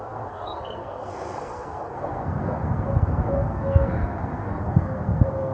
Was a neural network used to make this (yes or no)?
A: yes